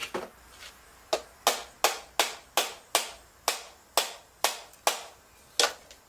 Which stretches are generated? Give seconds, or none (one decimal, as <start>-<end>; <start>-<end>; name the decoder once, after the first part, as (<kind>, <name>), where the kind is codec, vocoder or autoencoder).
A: none